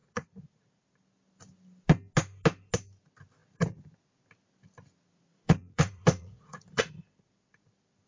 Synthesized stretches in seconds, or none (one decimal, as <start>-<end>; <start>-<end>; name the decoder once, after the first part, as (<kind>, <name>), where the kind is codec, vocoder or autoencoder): 0.0-0.8 (vocoder, Vocos); 5.3-6.9